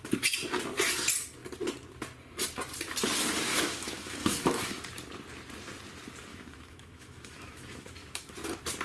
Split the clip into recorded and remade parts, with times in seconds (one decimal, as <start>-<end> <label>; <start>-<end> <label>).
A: 0.0-3.5 recorded; 3.5-4.8 remade; 4.8-6.3 recorded; 6.3-8.3 remade; 8.3-8.8 recorded